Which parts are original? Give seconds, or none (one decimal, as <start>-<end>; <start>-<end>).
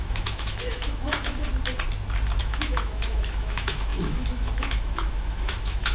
1.5-2.4